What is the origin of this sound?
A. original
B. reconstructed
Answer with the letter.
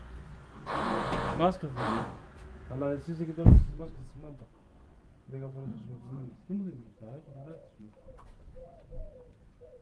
B